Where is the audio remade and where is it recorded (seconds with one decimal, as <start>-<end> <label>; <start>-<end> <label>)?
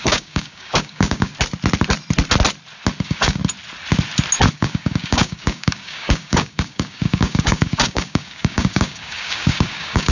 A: 0.0-1.3 remade; 1.3-3.0 recorded; 3.0-3.4 remade; 3.4-4.5 recorded; 4.5-10.1 remade